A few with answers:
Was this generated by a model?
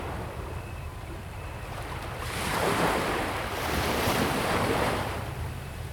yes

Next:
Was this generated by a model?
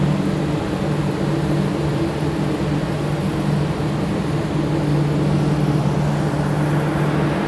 no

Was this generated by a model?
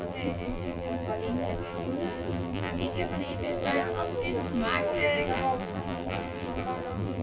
yes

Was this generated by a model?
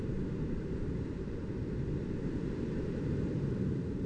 yes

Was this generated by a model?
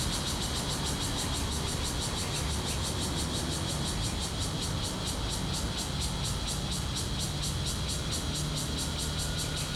no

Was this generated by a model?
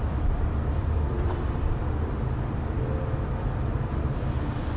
yes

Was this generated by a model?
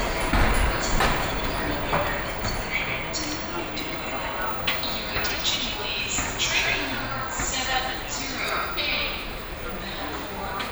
no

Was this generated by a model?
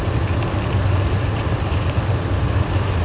no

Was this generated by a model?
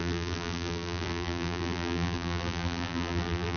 yes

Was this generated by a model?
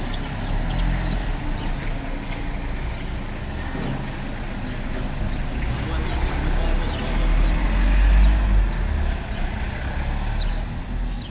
no